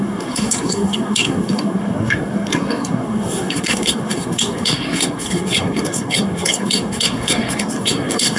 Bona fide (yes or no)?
no